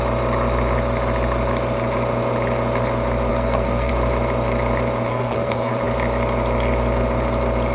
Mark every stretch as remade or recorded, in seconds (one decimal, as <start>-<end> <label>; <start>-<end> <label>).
0.0-3.3 recorded; 3.3-3.9 remade; 3.9-5.1 recorded; 5.1-5.7 remade; 5.7-7.7 recorded